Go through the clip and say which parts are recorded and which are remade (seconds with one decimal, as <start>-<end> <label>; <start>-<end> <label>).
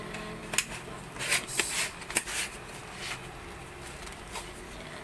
0.0-5.0 recorded